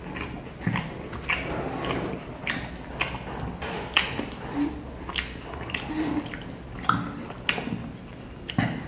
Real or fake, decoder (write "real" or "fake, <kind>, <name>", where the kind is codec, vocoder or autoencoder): real